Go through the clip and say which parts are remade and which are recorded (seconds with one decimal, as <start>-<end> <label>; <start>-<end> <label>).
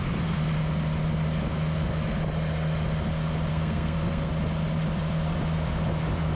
0.0-3.5 recorded; 3.5-4.3 remade; 4.3-6.3 recorded